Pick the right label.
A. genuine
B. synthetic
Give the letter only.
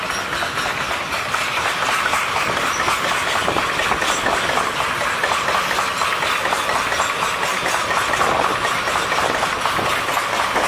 A